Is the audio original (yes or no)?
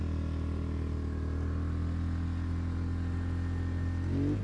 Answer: yes